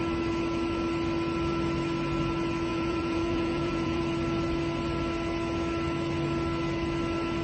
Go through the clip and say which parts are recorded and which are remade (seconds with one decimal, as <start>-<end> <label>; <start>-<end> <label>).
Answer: 0.0-2.7 recorded; 2.7-4.0 remade; 4.0-7.4 recorded